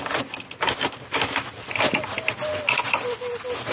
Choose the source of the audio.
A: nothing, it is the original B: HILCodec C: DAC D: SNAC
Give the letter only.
A